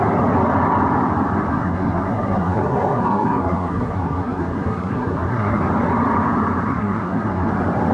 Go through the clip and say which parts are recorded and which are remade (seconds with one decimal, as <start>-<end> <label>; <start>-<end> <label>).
0.0-1.5 recorded; 1.5-5.6 remade; 5.6-6.7 recorded; 6.7-7.5 remade; 7.5-7.9 recorded